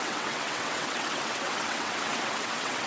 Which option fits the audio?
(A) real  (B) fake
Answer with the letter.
B